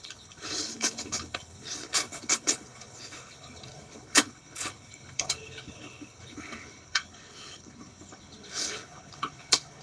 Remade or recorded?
remade